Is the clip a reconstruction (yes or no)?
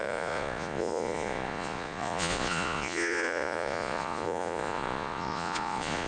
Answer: yes